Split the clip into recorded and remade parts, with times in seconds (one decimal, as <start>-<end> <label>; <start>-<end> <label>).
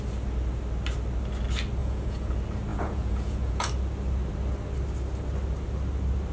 0.0-1.8 recorded; 1.8-2.3 remade; 2.3-2.7 recorded; 2.7-3.7 remade; 3.7-6.3 recorded